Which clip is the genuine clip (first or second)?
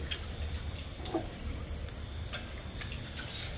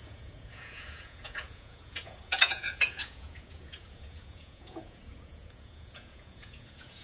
first